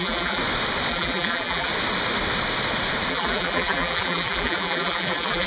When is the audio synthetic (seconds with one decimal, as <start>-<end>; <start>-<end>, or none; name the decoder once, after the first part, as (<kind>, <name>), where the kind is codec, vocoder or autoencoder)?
0.0-0.4 (vocoder, BigVGAN v2); 0.9-1.7; 3.1-5.5